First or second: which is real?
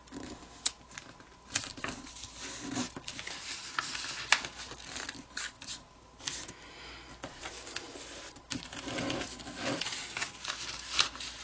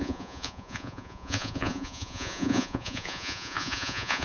first